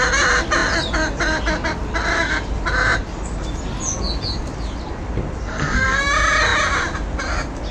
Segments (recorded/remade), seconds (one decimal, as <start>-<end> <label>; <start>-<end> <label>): 0.0-5.4 recorded; 5.4-6.0 remade; 6.0-7.7 recorded